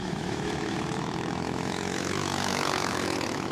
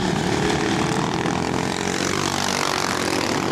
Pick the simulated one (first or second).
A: first